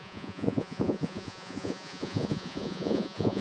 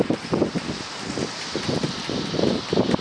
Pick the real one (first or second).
second